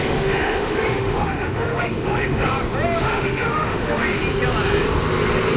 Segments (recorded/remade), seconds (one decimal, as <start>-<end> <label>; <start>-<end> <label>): 0.0-2.5 remade; 2.5-3.0 recorded; 3.0-4.2 remade; 4.2-5.6 recorded